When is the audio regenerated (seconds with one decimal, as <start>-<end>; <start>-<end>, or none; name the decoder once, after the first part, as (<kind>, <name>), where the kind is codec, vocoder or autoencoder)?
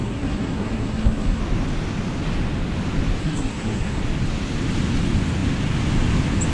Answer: 0.0-1.4 (codec, SNAC); 3.2-4.0